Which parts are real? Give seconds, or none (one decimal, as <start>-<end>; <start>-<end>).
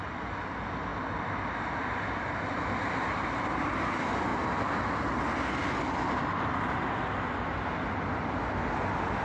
0.0-9.2